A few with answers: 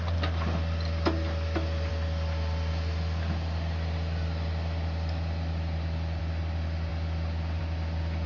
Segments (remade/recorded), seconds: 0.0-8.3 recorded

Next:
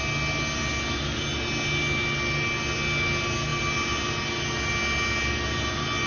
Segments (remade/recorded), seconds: 0.0-6.1 recorded

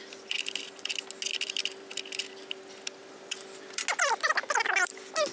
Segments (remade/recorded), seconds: 0.0-1.3 recorded; 1.3-2.6 remade; 2.6-3.0 recorded; 3.0-3.8 remade; 3.8-5.3 recorded